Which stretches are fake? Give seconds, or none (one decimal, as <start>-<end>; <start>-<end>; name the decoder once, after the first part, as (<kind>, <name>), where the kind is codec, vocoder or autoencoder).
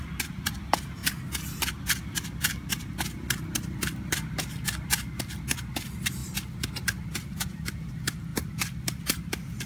none